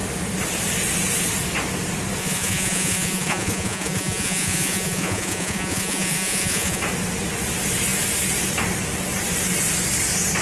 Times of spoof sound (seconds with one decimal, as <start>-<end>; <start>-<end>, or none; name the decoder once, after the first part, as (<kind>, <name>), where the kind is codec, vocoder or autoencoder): 2.2-6.8 (vocoder, Vocos)